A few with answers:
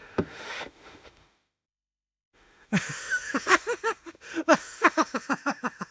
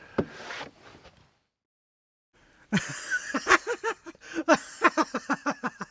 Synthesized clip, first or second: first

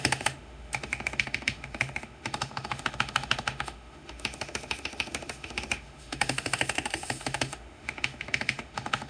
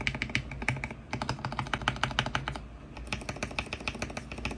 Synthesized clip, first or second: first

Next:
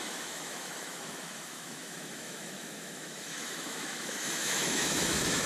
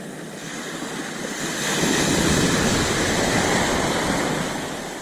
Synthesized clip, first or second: first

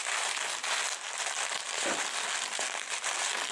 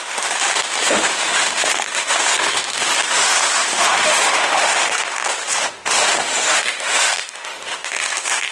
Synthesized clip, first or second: second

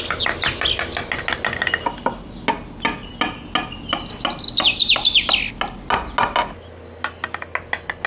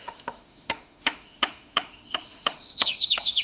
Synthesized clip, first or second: second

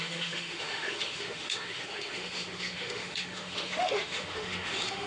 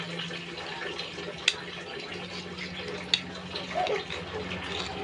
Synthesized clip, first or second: first